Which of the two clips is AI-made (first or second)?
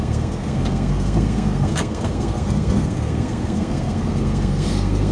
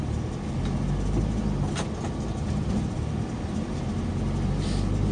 first